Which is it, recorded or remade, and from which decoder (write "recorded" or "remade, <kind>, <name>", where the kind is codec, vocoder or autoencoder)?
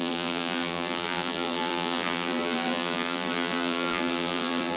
remade, vocoder, BigVGAN v2